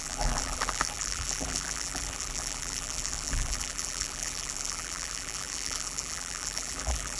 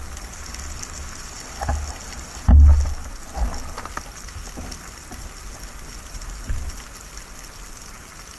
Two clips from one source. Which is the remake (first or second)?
first